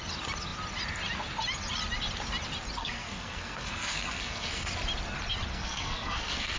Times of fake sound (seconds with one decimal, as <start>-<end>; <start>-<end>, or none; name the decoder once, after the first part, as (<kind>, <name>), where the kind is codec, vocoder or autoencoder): 2.8-4.7 (codec, SNAC); 5.5-6.6